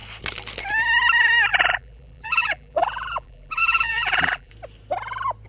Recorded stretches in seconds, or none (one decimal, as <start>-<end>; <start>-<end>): 0.0-1.5; 4.5-5.5